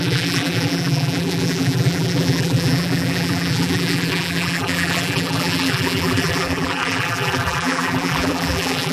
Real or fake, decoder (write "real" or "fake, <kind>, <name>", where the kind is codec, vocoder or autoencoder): fake, vocoder, BigVGAN v2